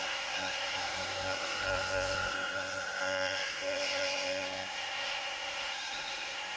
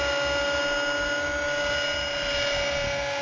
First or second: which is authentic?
second